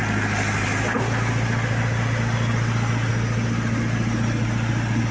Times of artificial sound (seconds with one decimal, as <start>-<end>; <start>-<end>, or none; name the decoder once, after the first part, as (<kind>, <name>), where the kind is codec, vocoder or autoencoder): none